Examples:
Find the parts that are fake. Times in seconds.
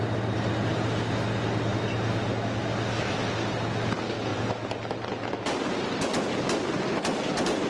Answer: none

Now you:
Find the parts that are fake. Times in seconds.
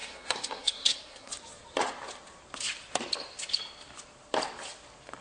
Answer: 0.0-1.3 (codec, SNAC)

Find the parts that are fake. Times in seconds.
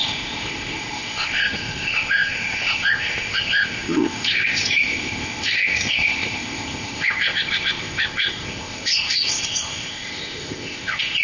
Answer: 0.0-11.2 (codec, ZipCodec)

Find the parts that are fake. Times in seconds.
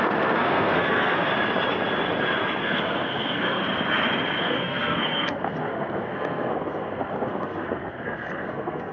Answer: 0.0-1.3 (codec, SNAC); 2.6-3.6; 4.4-8.9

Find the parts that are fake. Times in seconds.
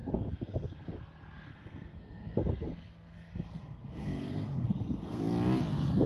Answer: 0.0-1.0 (codec, SNAC); 1.5-5.2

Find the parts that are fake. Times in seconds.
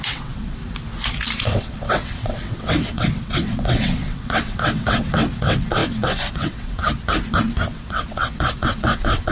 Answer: 0.0-0.6 (vocoder, WaveNeXt); 1.4-6.8; 7.7-9.3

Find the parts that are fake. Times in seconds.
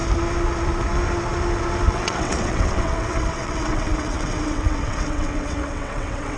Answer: 1.9-6.4 (vocoder, WaveNeXt)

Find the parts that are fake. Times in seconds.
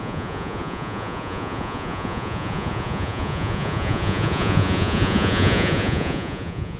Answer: 0.0-6.8 (vocoder, Vocos)